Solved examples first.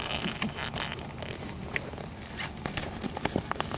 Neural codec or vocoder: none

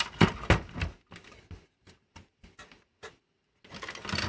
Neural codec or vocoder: none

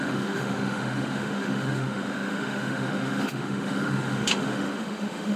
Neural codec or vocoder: autoencoder, DAC-VAE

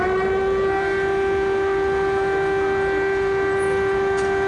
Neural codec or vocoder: none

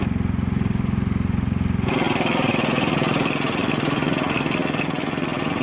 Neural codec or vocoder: none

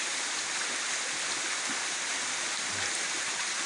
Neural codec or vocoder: none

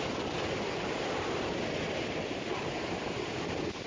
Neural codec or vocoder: none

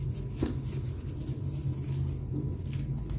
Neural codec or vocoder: none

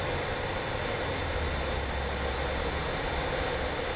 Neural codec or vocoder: none